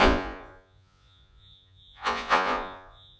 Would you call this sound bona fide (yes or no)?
no